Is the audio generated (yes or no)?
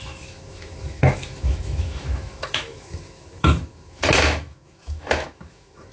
yes